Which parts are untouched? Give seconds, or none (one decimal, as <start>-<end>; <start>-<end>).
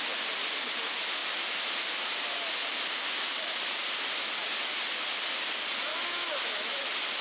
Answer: 0.0-5.9; 6.8-7.2